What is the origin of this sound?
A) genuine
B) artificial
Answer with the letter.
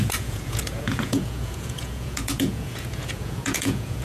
B